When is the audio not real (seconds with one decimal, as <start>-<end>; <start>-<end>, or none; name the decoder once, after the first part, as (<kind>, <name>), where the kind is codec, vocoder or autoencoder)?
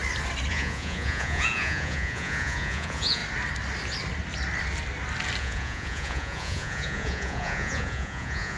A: 0.5-3.2 (vocoder, Vocos); 5.4-8.6